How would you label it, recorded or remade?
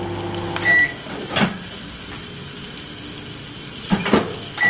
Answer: recorded